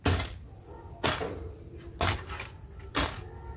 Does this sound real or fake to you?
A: real